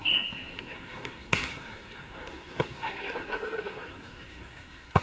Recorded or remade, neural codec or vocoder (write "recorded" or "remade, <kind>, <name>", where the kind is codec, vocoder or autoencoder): remade, codec, SNAC